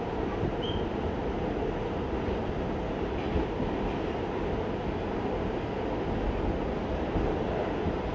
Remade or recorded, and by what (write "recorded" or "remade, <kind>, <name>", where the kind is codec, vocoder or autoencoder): recorded